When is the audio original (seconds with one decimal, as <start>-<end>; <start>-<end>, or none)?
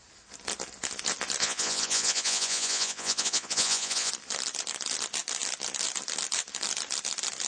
0.0-1.4; 4.1-7.5